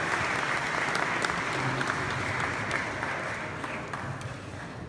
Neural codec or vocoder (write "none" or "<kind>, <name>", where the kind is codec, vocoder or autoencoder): none